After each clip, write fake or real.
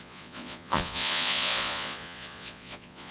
fake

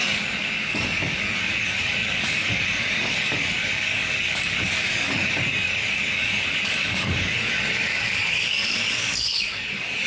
fake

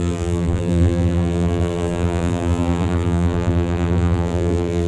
fake